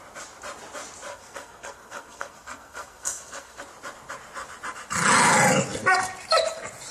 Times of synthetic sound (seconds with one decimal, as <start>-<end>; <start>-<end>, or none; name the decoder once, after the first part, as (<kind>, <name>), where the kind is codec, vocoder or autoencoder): 1.1-3.6 (codec, SNAC)